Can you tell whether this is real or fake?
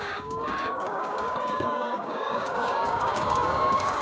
fake